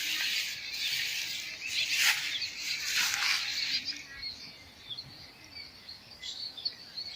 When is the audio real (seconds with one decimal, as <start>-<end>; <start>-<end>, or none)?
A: 0.0-5.8; 6.7-7.2